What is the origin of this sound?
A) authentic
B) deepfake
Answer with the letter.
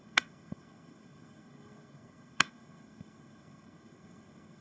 B